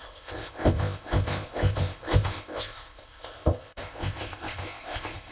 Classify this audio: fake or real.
fake